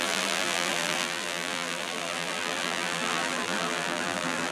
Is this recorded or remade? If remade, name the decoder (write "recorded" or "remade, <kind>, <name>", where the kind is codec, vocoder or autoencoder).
remade, vocoder, BigVGAN v2